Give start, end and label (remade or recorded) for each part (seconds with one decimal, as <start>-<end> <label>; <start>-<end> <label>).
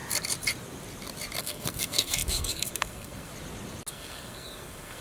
0.0-1.4 recorded; 1.4-3.3 remade; 3.3-3.9 recorded; 3.9-5.0 remade